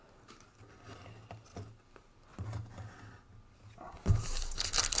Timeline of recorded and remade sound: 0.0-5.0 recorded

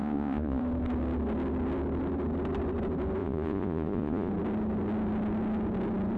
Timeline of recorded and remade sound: 0.0-0.6 remade; 0.6-3.2 recorded; 3.2-4.3 remade; 4.3-6.2 recorded

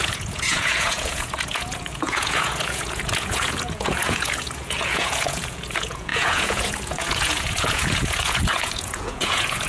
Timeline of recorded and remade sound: 0.0-9.7 remade

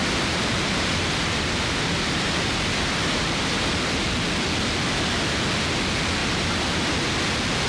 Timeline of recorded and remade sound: 0.0-3.6 remade; 3.6-6.2 recorded; 6.2-6.9 remade; 6.9-7.7 recorded

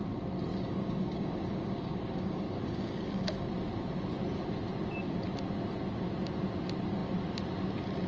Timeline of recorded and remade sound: 0.0-0.5 recorded; 0.5-3.5 remade; 3.5-8.1 recorded

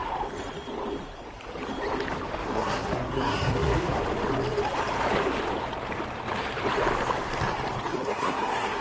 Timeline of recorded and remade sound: 0.0-2.5 recorded; 2.5-4.0 remade; 4.0-7.9 recorded; 7.9-8.8 remade

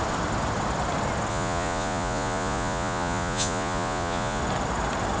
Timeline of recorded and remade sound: 0.0-1.3 recorded; 1.3-4.4 remade; 4.4-5.2 recorded

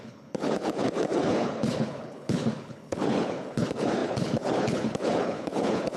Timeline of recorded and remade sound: 0.0-6.0 remade